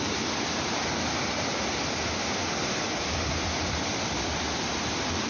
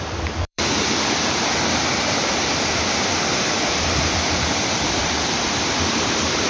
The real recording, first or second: first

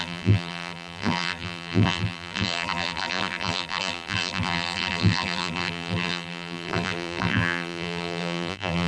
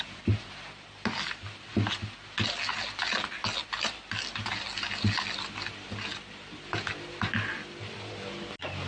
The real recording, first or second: second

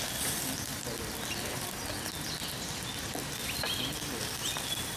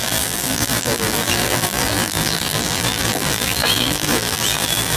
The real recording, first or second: first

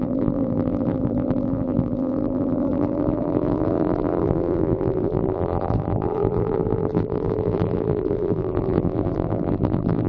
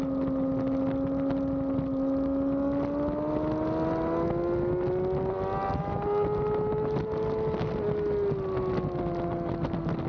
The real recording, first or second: second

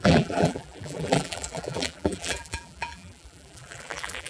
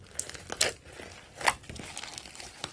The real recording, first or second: second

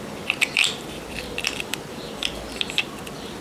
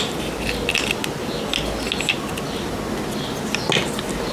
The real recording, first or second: second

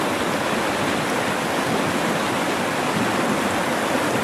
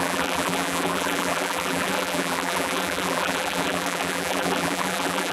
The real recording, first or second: first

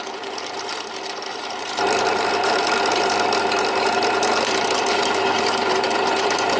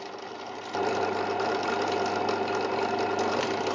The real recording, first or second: second